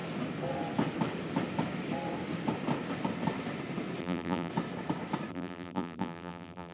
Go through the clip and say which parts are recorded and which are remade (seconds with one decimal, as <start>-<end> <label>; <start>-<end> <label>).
0.0-4.0 recorded; 4.0-4.5 remade; 4.5-5.3 recorded; 5.3-6.7 remade